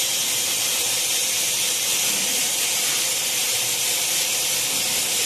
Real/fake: fake